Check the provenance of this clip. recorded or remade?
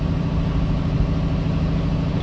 recorded